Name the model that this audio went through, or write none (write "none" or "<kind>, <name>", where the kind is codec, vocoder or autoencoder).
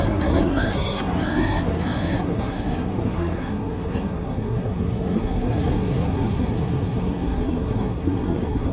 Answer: codec, SNAC